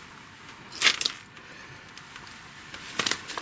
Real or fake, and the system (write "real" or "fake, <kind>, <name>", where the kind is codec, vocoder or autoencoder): real